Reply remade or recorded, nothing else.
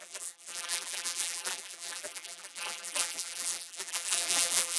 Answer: remade